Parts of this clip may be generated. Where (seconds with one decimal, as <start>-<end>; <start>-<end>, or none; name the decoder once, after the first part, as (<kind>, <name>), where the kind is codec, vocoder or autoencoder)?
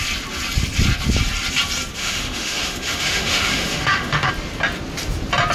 2.0-4.3 (autoencoder, DAC-VAE)